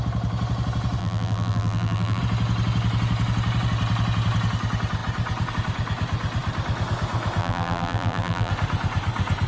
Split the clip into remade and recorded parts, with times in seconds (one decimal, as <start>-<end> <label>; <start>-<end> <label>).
0.0-1.0 recorded; 1.0-2.2 remade; 2.2-7.4 recorded; 7.4-8.5 remade; 8.5-9.5 recorded

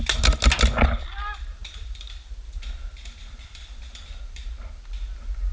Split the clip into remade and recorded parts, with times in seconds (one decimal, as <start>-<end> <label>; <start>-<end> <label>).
0.0-1.6 recorded; 1.6-2.3 remade; 2.3-3.2 recorded; 3.2-4.2 remade; 4.2-5.5 recorded

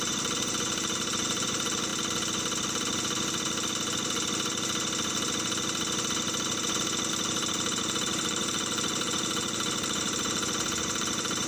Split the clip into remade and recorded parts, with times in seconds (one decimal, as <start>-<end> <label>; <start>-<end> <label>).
0.0-1.9 remade; 1.9-7.1 recorded; 7.1-11.5 remade

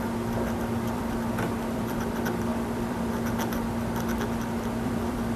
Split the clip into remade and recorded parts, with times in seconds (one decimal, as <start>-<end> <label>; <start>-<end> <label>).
0.0-5.4 remade

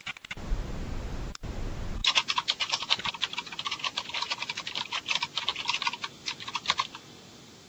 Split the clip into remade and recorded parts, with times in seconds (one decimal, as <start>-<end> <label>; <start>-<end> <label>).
0.0-7.7 remade

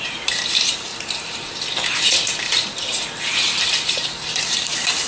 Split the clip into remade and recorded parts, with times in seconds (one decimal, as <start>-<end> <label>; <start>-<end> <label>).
0.0-0.9 remade; 0.9-3.9 recorded; 3.9-5.1 remade

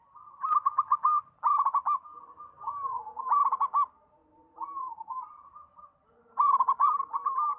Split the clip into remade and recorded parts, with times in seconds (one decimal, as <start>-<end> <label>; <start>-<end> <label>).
0.0-4.2 recorded; 4.2-7.6 remade